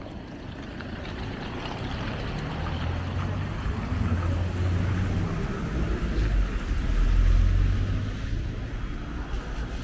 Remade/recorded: recorded